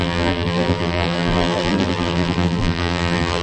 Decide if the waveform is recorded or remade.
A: remade